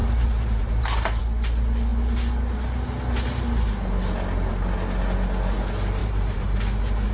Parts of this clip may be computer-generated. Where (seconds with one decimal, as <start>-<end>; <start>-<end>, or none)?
0.0-1.2; 6.0-6.6